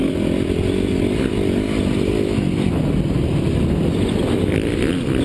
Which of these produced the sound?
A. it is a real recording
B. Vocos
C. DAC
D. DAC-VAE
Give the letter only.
A